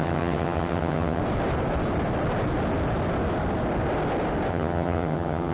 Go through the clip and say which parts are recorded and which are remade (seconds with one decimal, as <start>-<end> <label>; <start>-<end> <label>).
0.0-1.2 remade; 1.2-4.5 recorded; 4.5-5.5 remade